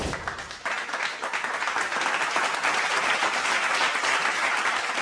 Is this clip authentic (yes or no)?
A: yes